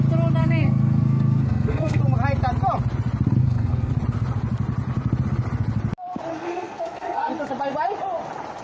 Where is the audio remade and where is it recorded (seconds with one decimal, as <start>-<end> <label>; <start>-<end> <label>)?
0.0-0.4 recorded; 0.4-2.0 remade; 2.0-3.4 recorded; 3.4-3.9 remade; 3.9-6.3 recorded; 6.3-7.3 remade; 7.3-8.6 recorded